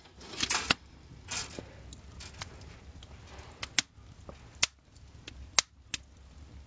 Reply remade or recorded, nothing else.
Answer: recorded